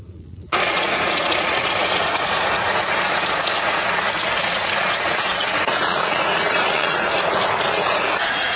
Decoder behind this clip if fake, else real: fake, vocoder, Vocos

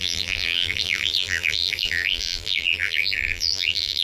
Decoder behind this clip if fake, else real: fake, vocoder, BigVGAN v2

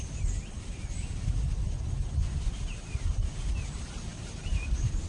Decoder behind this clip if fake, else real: real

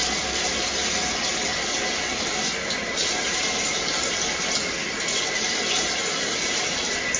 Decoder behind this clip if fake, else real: real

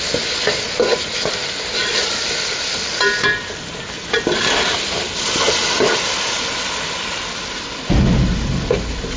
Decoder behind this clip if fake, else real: real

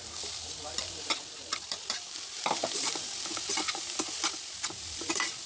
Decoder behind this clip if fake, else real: fake, vocoder, BigVGAN v2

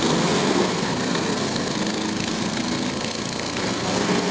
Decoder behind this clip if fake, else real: fake, codec, SNAC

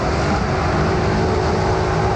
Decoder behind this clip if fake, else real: real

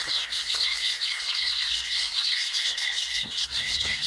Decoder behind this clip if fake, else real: fake, codec, SNAC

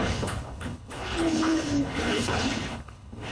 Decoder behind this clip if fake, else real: fake, codec, HILCodec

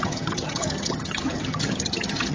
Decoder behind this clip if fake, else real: fake, vocoder, HiFi-GAN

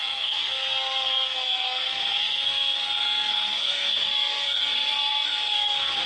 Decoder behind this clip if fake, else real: fake, codec, SNAC